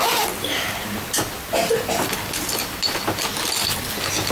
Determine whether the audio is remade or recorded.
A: recorded